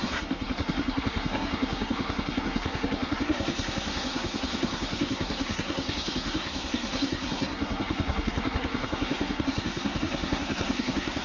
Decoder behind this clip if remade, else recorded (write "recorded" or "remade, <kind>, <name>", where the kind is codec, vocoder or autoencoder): remade, codec, SNAC